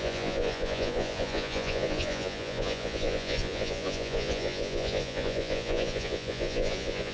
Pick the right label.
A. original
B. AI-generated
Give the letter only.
B